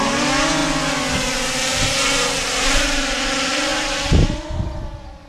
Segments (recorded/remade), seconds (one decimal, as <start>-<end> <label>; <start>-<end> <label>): 0.0-5.3 recorded